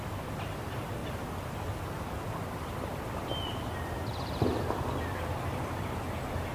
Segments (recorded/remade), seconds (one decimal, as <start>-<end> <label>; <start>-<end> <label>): 0.0-6.5 recorded